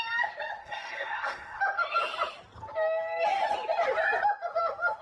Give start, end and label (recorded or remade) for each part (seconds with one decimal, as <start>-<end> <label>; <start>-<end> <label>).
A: 0.0-0.6 recorded; 0.6-1.6 remade; 1.6-5.0 recorded